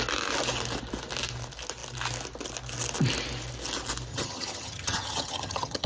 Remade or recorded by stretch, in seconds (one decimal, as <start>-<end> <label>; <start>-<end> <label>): 0.0-4.1 recorded; 4.1-5.9 remade